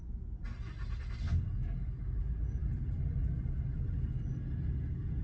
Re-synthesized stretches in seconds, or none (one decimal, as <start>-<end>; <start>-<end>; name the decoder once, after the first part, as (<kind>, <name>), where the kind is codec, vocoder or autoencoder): none